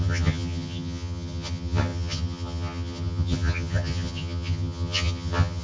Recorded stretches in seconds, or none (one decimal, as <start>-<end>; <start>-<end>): none